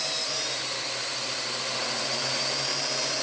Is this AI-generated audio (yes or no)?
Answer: no